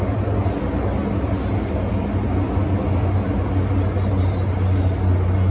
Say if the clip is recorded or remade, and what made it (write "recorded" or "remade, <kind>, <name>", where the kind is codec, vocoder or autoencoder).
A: recorded